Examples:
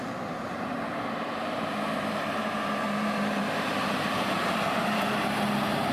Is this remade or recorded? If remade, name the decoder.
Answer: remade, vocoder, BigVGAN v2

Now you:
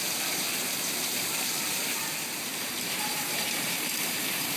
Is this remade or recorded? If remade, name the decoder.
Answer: remade, vocoder, BigVGAN v2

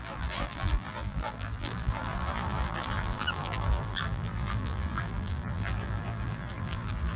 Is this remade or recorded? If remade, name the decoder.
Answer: remade, vocoder, BigVGAN v2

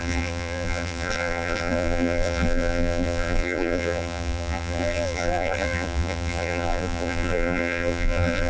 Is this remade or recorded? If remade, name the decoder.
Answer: remade, vocoder, BigVGAN v2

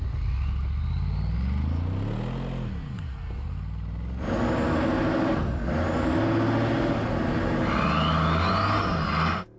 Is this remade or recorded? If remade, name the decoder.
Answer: recorded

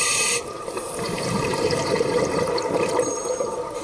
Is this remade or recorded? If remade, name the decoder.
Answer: remade, vocoder, BigVGAN v2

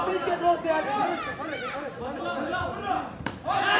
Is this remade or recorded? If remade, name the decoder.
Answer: remade, vocoder, BigVGAN v2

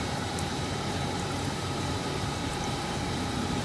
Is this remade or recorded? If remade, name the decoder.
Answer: remade, vocoder, BigVGAN v2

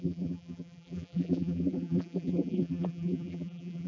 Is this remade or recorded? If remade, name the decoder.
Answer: remade, vocoder, BigVGAN v2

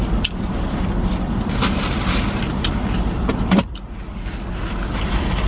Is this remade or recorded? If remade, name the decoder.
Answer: remade, vocoder, BigVGAN v2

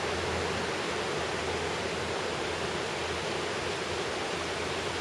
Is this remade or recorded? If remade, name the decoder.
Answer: recorded